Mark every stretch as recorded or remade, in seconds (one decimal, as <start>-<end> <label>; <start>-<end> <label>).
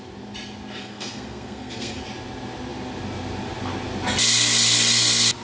0.0-0.8 recorded; 0.8-2.0 remade; 2.0-5.4 recorded